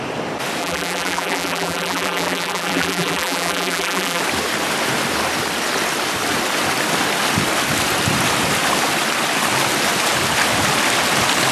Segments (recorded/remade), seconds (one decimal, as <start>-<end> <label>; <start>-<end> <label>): 0.0-0.6 recorded; 0.6-4.2 remade; 4.2-11.5 recorded